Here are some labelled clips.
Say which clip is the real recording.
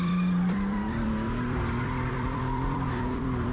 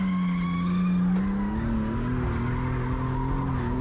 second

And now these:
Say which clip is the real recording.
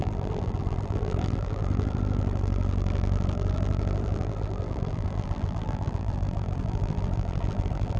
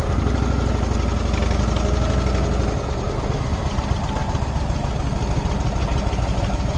second